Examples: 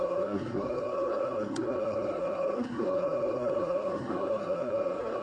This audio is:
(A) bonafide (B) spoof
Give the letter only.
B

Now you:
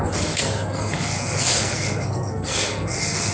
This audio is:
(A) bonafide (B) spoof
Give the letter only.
B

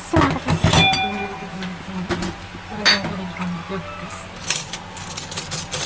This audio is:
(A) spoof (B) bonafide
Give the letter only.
B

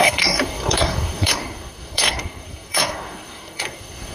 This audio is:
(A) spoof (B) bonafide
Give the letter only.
A